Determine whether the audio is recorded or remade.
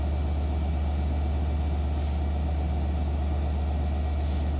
recorded